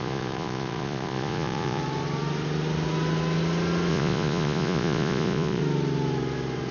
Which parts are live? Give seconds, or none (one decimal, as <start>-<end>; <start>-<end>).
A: 1.8-3.9; 5.6-6.7